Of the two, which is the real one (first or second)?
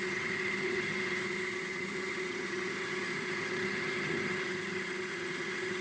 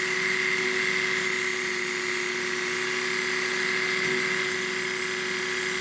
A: second